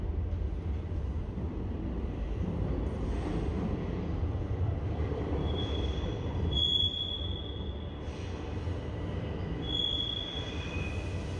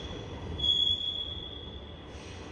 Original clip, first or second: first